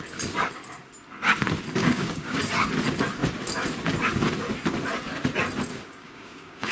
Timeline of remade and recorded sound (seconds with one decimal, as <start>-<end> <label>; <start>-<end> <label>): 0.0-1.8 recorded; 1.8-2.4 remade; 2.4-5.7 recorded; 5.7-6.7 remade

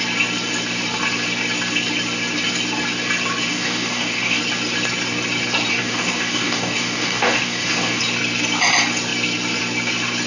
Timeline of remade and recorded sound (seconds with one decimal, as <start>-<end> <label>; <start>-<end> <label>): 0.0-3.5 recorded; 3.5-4.4 remade; 4.4-5.7 recorded; 5.7-8.0 remade; 8.0-10.3 recorded

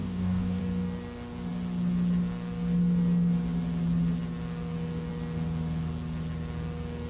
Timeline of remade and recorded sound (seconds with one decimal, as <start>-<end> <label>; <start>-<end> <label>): 0.0-0.6 remade; 0.6-7.1 recorded

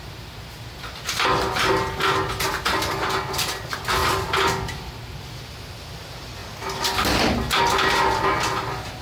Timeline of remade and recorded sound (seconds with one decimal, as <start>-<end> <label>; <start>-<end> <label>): 0.0-9.0 recorded

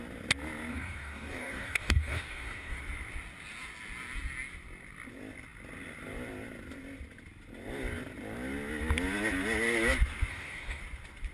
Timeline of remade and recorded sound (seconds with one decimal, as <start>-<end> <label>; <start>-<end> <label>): 0.0-0.7 recorded; 0.7-2.8 remade; 2.8-10.3 recorded; 10.3-10.8 remade; 10.8-11.3 recorded

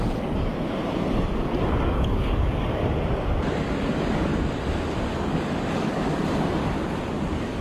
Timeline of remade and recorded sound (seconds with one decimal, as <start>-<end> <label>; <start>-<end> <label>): 0.0-0.5 remade; 0.5-1.4 recorded; 1.4-2.8 remade; 2.8-3.8 recorded; 3.8-4.3 remade; 4.3-5.1 recorded; 5.1-6.6 remade; 6.6-7.1 recorded; 7.1-7.6 remade